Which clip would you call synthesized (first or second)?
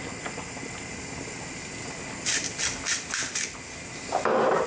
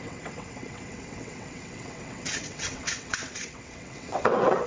second